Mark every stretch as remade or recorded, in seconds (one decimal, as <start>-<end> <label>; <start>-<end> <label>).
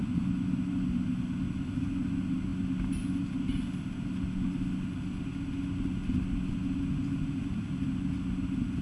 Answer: 0.0-8.8 recorded